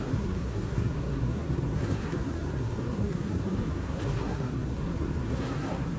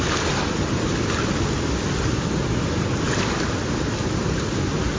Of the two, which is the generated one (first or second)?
first